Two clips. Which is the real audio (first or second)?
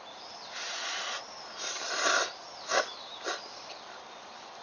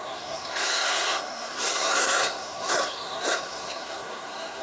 first